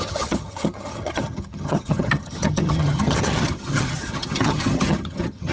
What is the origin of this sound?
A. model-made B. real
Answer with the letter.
A